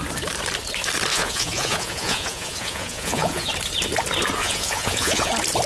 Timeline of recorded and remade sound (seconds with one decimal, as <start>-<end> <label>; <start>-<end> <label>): 0.0-1.1 recorded; 1.1-3.5 remade; 3.5-4.4 recorded; 4.4-5.3 remade; 5.3-5.7 recorded